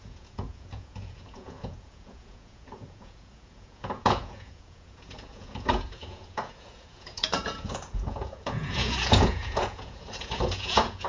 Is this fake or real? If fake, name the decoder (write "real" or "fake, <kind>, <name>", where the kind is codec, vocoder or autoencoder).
fake, vocoder, Vocos